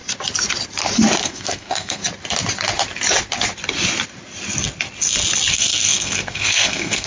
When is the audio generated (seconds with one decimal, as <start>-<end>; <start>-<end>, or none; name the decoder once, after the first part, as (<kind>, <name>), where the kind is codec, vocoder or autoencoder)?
1.2-2.0 (codec, SNAC); 5.5-7.1